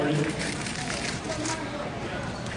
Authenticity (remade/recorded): remade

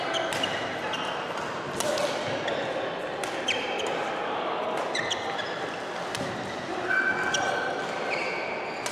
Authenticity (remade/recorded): recorded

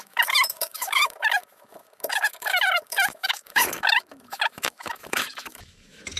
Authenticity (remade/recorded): remade